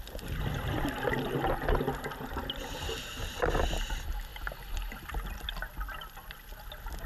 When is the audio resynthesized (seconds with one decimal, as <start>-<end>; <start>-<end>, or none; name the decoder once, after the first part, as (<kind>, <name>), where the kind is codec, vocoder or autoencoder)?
none